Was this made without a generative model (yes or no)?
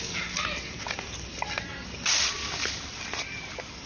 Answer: yes